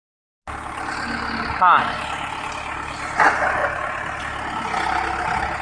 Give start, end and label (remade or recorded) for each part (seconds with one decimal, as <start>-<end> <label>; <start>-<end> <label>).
0.0-5.6 recorded